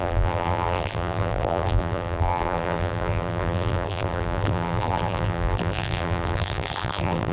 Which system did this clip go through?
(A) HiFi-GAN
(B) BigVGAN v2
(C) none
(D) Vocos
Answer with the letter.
B